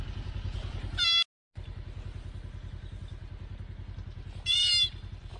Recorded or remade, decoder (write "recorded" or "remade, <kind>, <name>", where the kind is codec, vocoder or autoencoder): recorded